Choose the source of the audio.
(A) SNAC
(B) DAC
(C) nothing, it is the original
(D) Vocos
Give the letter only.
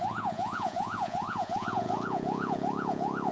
D